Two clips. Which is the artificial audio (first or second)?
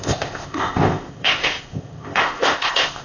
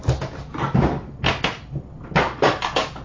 first